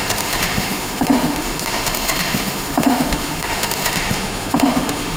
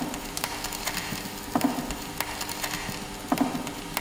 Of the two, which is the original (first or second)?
second